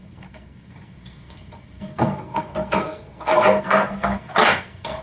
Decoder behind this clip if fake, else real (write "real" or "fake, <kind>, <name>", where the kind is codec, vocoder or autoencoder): fake, codec, SNAC